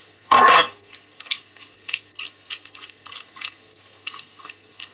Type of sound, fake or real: fake